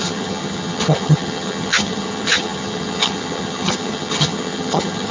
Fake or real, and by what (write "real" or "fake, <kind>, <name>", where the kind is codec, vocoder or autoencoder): fake, vocoder, HiFi-GAN